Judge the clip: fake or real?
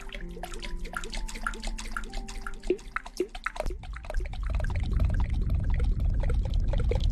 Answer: real